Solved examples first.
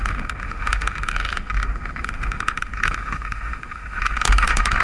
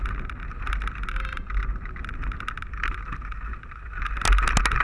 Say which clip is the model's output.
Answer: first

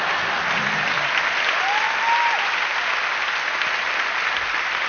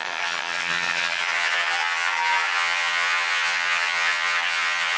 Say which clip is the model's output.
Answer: second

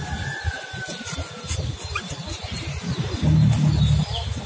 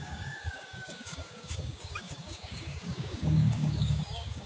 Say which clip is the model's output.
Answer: second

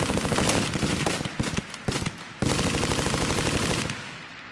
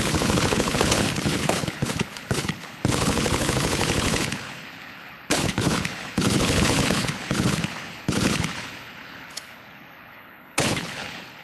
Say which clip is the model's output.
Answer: second